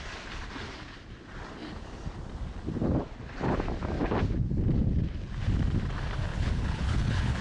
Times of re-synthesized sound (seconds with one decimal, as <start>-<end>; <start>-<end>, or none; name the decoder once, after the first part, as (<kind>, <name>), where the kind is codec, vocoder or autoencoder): 6.3-7.4 (codec, HILCodec)